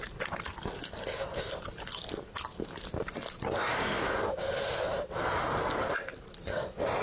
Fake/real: real